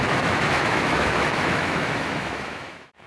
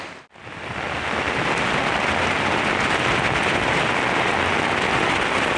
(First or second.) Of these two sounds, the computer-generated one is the first